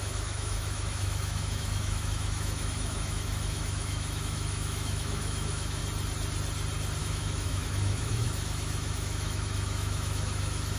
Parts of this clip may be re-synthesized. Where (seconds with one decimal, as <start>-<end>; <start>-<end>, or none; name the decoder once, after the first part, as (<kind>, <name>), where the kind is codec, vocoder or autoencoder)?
0.0-5.8 (autoencoder, DAC-VAE); 7.0-10.8